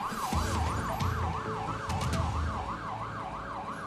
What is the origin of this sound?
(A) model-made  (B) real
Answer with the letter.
B